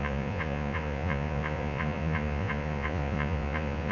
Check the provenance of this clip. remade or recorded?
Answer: remade